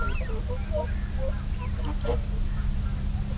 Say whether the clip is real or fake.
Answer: real